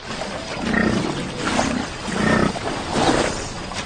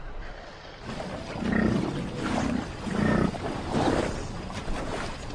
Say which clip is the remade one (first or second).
second